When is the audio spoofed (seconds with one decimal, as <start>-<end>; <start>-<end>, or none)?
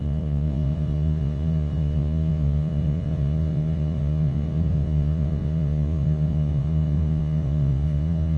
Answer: 0.0-8.4